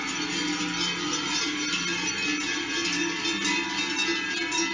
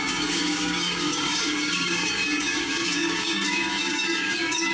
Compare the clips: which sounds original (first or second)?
first